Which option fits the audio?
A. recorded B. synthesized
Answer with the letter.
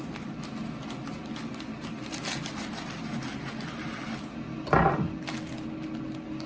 A